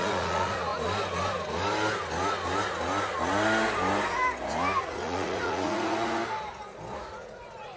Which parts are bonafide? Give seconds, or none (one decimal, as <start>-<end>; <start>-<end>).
0.7-4.8; 6.2-7.0